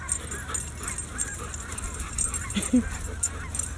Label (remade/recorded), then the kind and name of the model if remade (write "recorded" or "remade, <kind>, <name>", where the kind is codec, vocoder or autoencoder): recorded